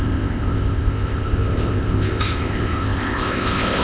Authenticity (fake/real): fake